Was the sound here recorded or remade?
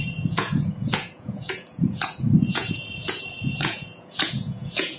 remade